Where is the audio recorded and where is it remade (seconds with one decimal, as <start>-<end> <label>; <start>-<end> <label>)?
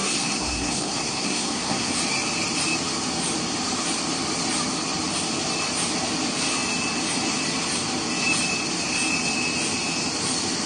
0.0-2.0 remade; 2.0-10.7 recorded